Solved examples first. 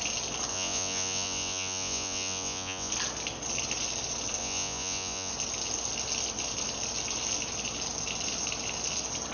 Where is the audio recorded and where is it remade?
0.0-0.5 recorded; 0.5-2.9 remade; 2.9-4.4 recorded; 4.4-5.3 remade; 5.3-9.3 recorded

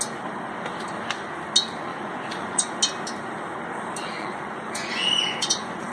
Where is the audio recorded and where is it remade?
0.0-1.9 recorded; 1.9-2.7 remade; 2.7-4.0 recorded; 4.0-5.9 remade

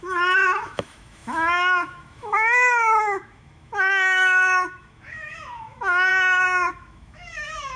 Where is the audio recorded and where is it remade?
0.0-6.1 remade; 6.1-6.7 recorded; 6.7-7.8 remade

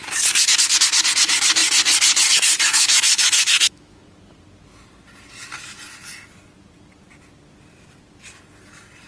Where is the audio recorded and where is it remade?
0.0-2.7 recorded; 2.7-4.0 remade; 4.0-9.1 recorded

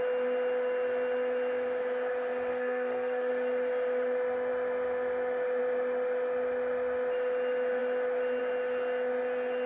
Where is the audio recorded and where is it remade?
0.0-2.5 recorded; 2.5-3.3 remade; 3.3-9.7 recorded

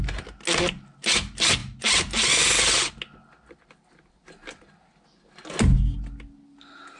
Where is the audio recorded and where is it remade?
0.0-7.0 recorded

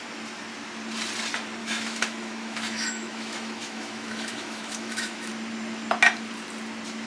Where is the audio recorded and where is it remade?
0.0-1.6 recorded; 1.6-5.3 remade; 5.3-7.1 recorded